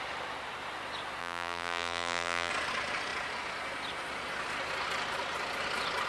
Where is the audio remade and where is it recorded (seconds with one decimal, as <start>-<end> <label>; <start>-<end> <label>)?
0.0-1.2 recorded; 1.2-2.5 remade; 2.5-6.1 recorded